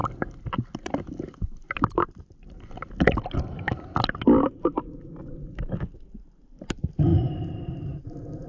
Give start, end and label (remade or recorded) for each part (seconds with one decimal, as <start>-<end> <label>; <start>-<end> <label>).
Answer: 0.0-7.1 recorded; 7.1-8.1 remade; 8.1-8.5 recorded